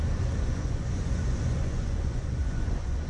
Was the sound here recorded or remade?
remade